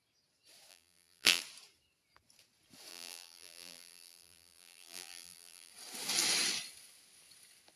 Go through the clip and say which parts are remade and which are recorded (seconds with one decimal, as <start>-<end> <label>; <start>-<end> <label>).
0.0-0.7 recorded; 0.7-1.4 remade; 1.4-2.9 recorded; 2.9-5.7 remade; 5.7-7.8 recorded